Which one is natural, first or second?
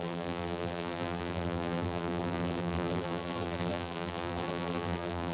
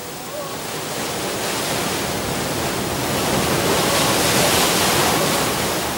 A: second